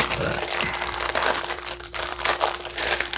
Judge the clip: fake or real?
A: fake